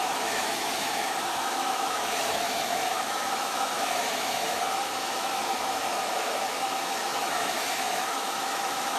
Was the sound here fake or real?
fake